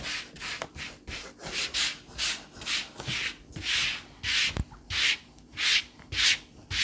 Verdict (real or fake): real